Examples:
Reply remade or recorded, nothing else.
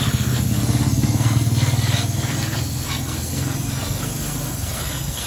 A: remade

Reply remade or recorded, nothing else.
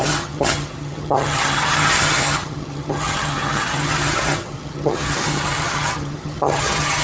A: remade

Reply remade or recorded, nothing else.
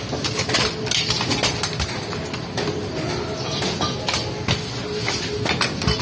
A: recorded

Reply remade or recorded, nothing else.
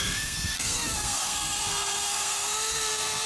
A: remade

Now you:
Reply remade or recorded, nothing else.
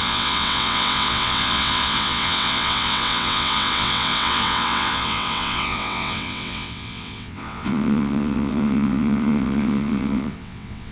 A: remade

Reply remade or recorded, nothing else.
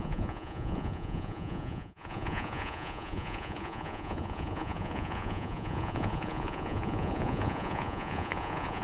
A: remade